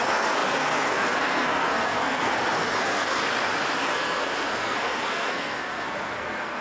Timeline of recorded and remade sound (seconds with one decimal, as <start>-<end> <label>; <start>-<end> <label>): 0.0-3.2 remade; 3.2-3.8 recorded; 3.8-6.6 remade